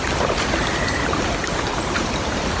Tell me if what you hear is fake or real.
real